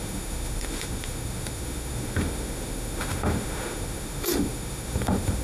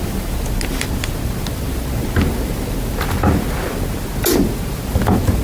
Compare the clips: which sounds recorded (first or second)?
second